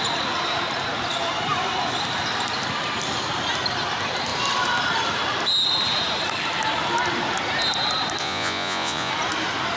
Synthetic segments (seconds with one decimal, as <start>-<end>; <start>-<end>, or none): 8.2-9.1